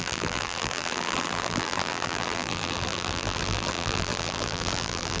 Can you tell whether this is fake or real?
fake